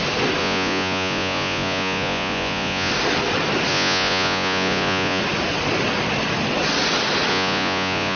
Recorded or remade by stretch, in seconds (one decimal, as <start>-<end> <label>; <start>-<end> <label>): 0.0-0.4 recorded; 0.4-2.9 remade; 2.9-3.7 recorded; 3.7-5.2 remade; 5.2-7.3 recorded; 7.3-8.2 remade